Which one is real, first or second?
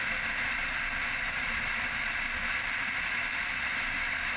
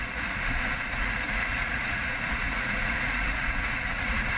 first